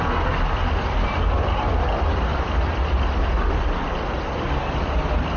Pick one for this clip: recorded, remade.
remade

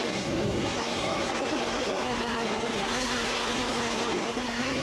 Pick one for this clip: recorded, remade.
remade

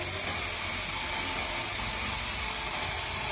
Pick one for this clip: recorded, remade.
recorded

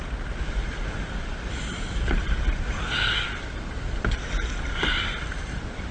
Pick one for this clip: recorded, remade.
recorded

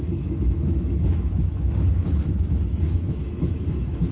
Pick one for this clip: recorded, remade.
remade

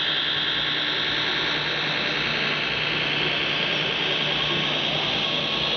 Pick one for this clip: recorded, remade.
recorded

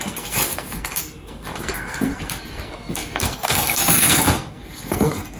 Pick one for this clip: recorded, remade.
remade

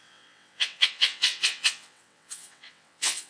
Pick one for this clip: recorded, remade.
remade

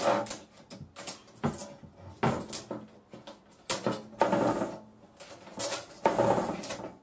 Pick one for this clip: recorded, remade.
recorded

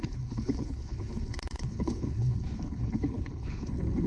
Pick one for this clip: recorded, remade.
remade